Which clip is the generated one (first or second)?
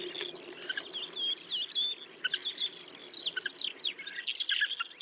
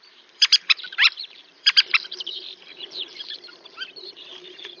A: second